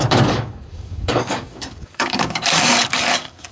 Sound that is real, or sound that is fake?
fake